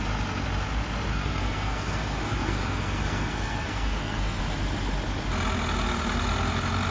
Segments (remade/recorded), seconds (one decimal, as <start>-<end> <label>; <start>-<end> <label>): 0.0-1.1 recorded; 1.1-4.4 remade; 4.4-6.9 recorded